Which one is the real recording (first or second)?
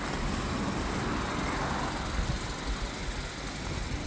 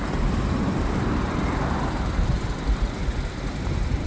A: first